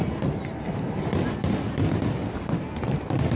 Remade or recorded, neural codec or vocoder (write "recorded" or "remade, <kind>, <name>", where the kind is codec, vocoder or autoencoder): recorded